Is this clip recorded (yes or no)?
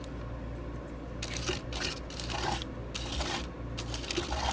yes